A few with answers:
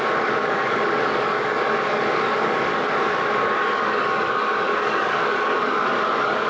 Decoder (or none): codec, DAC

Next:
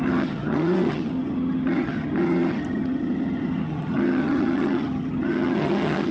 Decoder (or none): vocoder, HiFi-GAN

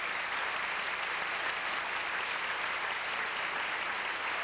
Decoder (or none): none